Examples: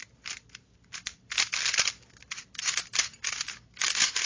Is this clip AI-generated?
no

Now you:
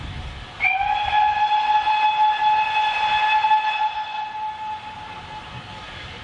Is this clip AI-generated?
no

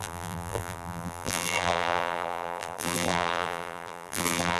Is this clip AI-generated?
yes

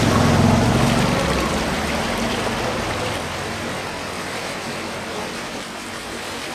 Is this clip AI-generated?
no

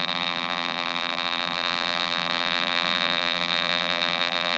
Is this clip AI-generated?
yes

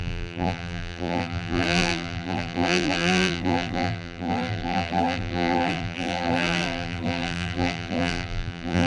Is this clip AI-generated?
yes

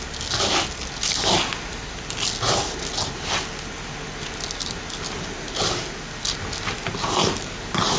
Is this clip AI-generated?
no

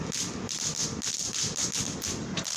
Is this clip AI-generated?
no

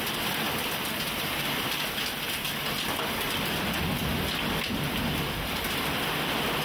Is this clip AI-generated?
no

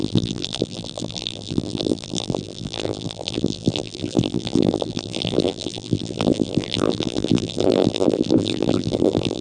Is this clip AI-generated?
yes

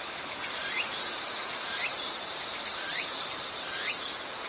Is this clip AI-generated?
yes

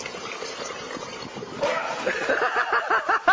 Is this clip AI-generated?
no